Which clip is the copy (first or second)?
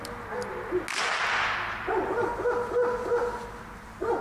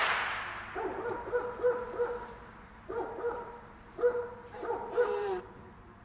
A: second